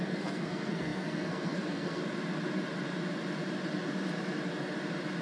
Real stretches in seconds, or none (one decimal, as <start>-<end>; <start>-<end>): 2.0-5.2